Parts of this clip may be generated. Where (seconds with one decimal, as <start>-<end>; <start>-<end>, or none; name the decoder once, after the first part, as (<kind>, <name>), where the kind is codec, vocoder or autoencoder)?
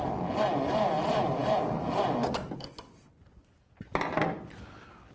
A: none